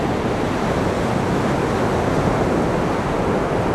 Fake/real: real